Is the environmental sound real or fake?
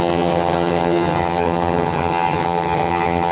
fake